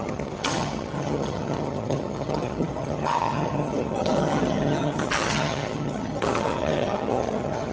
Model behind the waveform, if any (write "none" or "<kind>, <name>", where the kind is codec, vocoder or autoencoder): vocoder, HiFi-GAN